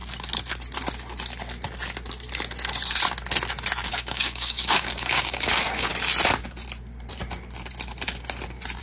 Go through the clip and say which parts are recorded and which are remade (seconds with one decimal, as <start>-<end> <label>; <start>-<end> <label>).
0.0-3.9 recorded; 3.9-5.9 remade; 5.9-8.8 recorded